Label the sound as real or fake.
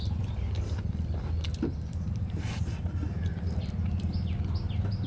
real